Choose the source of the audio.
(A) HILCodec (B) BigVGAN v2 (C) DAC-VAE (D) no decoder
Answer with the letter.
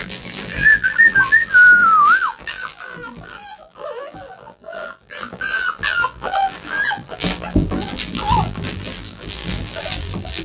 B